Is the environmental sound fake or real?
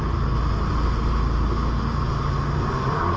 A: real